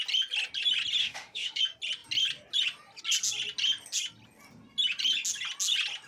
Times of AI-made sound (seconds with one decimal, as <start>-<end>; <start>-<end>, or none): 1.0-1.6